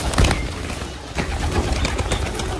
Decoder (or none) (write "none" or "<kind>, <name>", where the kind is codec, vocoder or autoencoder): none